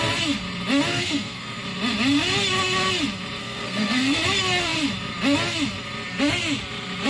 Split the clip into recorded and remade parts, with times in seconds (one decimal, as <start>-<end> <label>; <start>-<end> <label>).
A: 0.0-0.9 recorded; 0.9-1.6 remade; 1.6-3.4 recorded; 3.4-4.2 remade; 4.2-7.1 recorded